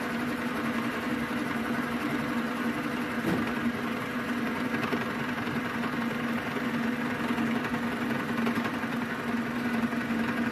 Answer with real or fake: real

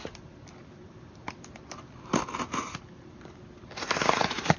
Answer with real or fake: real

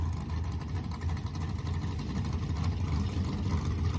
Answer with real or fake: real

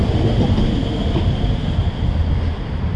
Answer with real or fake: real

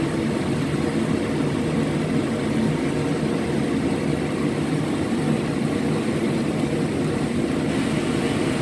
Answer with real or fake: real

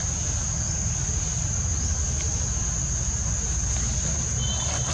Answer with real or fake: real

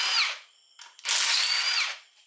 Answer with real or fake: real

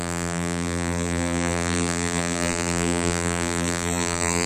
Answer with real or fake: fake